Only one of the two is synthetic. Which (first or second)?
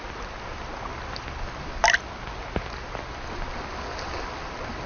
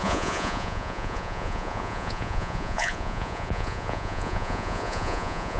second